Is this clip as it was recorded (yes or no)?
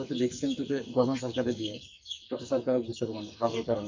no